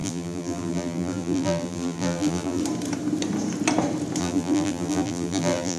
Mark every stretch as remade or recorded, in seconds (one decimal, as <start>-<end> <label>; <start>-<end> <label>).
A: 0.0-2.6 remade; 2.6-4.2 recorded; 4.2-5.8 remade